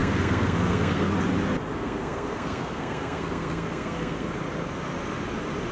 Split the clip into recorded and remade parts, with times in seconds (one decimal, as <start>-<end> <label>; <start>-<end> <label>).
0.0-1.1 remade; 1.1-1.7 recorded; 1.7-4.3 remade; 4.3-5.7 recorded